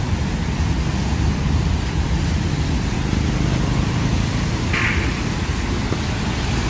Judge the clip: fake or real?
real